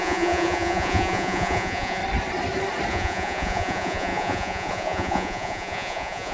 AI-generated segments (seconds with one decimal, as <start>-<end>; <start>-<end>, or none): 0.0-2.0; 2.9-6.3